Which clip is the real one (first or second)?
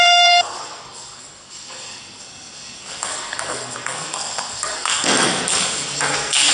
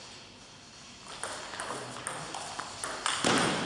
second